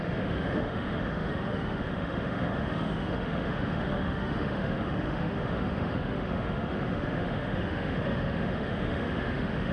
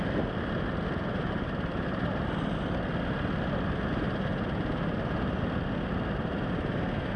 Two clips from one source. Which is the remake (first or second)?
first